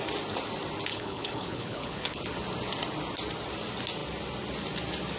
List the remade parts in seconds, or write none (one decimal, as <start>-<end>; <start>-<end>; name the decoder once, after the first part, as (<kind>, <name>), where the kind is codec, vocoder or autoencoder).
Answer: 0.9-2.2 (codec, HILCodec)